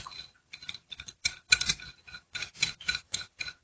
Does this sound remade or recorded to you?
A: remade